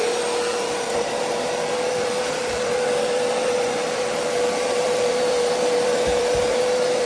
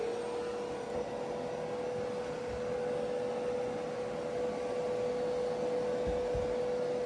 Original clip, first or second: second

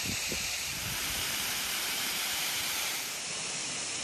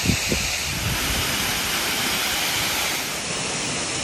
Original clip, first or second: second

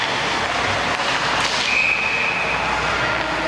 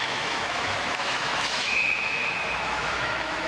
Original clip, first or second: first